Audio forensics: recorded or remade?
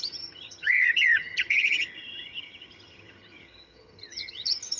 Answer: remade